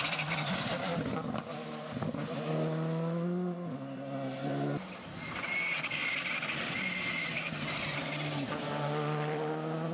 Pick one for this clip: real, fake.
real